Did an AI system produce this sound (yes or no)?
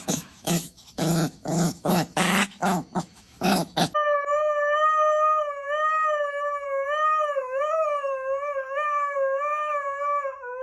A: yes